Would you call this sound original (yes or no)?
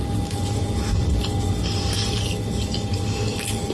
yes